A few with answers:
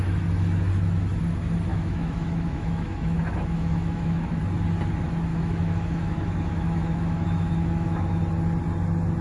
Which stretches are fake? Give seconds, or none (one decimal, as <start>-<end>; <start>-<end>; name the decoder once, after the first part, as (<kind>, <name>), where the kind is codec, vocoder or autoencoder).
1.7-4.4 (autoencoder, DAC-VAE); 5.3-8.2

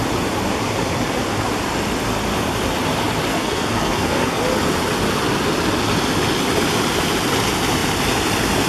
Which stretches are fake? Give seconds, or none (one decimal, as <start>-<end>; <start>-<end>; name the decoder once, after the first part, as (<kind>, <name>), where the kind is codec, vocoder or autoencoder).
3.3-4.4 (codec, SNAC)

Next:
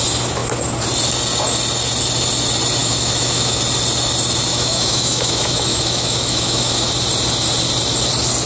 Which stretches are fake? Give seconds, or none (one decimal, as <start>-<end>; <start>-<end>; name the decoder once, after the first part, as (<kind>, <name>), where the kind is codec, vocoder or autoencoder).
2.8-3.6 (autoencoder, DAC-VAE); 4.5-6.9

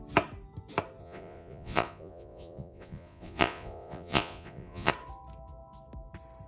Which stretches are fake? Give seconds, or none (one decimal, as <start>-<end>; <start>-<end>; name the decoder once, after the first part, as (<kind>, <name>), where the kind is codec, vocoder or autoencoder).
1.0-4.9 (vocoder, Vocos)

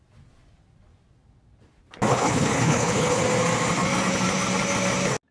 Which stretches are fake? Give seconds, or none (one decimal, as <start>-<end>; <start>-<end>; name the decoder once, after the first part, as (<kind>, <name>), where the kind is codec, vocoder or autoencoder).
2.1-3.2 (codec, HILCodec)

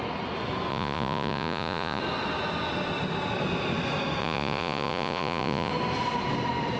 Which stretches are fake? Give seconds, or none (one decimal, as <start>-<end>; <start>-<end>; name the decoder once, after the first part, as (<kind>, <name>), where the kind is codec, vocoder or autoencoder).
0.7-2.0 (vocoder, Vocos); 4.2-5.7